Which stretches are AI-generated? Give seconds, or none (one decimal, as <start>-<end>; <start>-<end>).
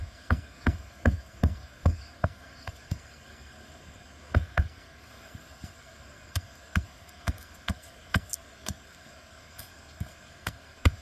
0.0-11.0